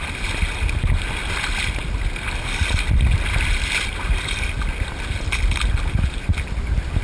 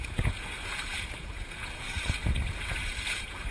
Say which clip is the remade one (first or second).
second